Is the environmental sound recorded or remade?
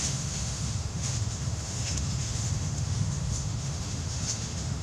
remade